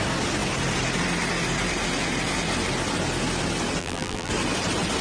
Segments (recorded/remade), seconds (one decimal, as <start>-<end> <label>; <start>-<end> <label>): 0.0-3.8 recorded; 3.8-4.3 remade; 4.3-5.0 recorded

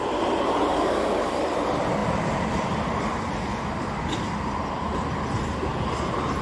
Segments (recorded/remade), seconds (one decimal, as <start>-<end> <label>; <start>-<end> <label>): 0.0-0.7 recorded; 0.7-1.4 remade; 1.4-6.4 recorded